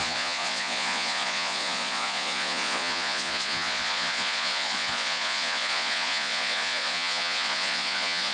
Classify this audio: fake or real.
fake